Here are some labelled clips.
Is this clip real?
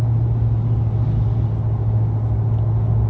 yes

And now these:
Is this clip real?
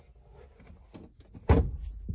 yes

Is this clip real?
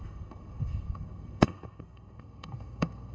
no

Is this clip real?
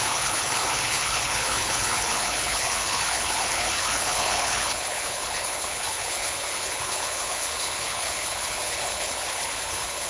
no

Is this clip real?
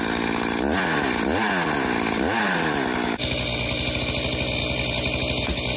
yes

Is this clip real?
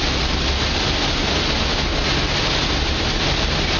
yes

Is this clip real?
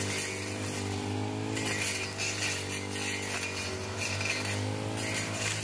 yes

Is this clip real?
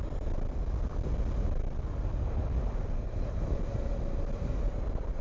yes